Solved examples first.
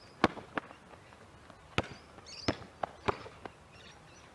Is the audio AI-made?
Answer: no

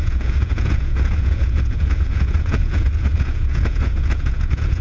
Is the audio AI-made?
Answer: yes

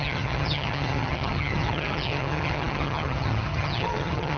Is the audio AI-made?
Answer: yes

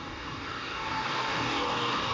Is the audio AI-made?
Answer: yes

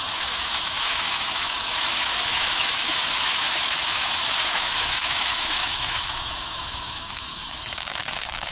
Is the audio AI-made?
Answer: yes